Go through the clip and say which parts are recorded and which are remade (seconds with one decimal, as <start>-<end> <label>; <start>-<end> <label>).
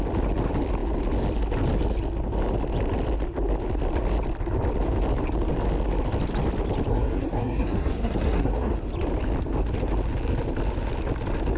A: 0.0-6.9 recorded; 6.9-8.7 remade; 8.7-11.6 recorded